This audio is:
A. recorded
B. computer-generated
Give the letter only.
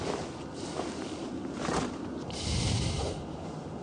A